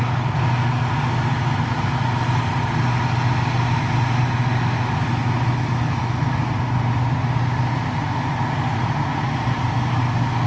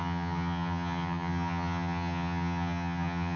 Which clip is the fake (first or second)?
second